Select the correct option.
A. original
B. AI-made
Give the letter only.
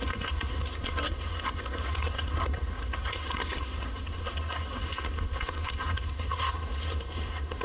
B